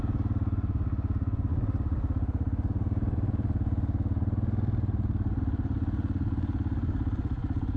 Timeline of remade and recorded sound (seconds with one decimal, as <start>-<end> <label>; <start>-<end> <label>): 0.0-7.8 recorded